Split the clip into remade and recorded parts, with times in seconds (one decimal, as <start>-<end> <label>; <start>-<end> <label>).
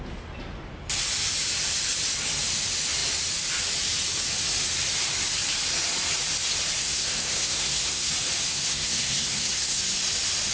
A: 0.0-6.8 recorded; 6.8-8.1 remade; 8.1-8.5 recorded; 8.5-9.8 remade; 9.8-10.5 recorded